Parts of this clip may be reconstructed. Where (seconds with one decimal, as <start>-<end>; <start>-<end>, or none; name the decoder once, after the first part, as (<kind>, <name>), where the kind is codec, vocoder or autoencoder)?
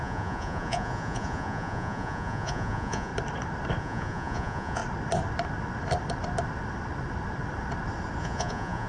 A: 0.0-3.1 (vocoder, Vocos); 3.8-4.8; 8.2-8.9